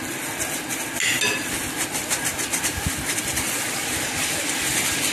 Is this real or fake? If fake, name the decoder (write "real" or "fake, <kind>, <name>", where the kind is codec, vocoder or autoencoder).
real